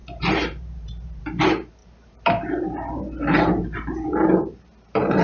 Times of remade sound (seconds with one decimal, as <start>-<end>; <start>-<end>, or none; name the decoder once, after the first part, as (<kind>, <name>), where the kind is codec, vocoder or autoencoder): 0.0-1.2 (vocoder, BigVGAN v2); 1.8-5.2